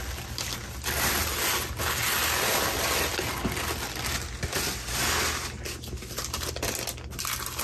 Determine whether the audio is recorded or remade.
recorded